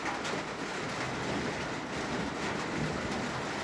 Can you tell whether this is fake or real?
real